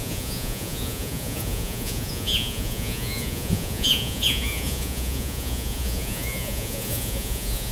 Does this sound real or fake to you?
fake